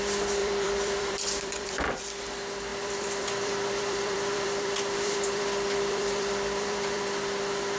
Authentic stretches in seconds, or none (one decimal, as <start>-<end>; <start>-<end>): 0.0-0.4; 2.0-2.7; 7.0-7.8

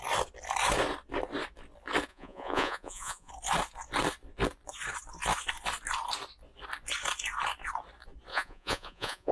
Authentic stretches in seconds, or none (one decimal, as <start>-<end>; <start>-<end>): 0.0-2.1; 3.3-8.3